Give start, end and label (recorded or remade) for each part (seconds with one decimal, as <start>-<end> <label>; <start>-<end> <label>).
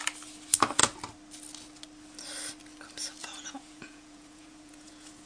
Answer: 0.0-3.2 recorded; 3.2-5.3 remade